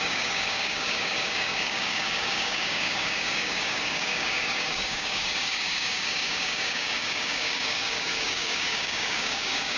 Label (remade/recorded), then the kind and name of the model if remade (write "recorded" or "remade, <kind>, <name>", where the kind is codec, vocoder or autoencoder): remade, codec, DAC